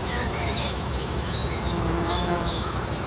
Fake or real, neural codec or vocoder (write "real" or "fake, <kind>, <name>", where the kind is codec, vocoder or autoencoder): fake, autoencoder, DAC-VAE